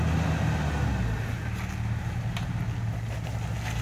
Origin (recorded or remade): recorded